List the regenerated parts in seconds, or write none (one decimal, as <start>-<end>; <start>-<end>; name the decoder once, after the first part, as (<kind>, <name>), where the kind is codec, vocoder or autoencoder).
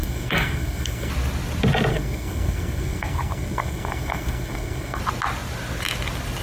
0.0-1.1 (codec, SNAC); 1.9-5.0